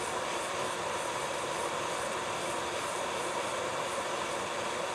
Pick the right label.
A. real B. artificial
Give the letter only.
B